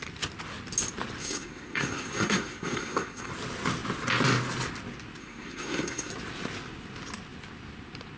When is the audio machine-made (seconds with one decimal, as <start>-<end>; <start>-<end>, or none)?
1.2-3.3; 5.2-6.1